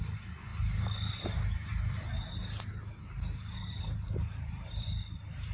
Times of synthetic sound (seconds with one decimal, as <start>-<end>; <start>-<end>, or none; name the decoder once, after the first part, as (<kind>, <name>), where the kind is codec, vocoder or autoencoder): none